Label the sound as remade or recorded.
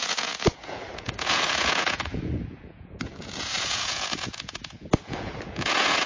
remade